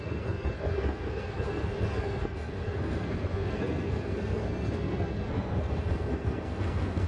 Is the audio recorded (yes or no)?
no